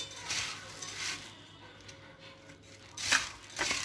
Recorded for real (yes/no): yes